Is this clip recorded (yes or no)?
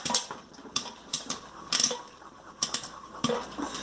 yes